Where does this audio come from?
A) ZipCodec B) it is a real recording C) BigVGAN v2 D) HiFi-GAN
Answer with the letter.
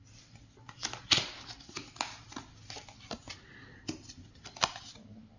B